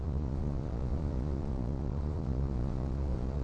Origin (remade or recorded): remade